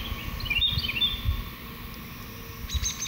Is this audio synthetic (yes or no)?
no